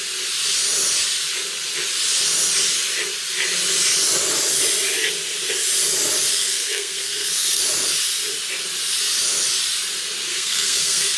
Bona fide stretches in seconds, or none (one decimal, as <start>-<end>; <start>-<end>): 0.0-6.3; 7.6-10.3